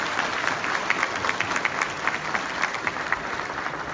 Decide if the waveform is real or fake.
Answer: real